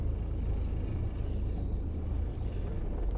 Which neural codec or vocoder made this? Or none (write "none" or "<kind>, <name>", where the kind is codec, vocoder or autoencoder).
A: none